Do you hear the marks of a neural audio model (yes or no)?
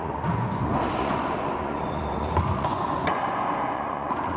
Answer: yes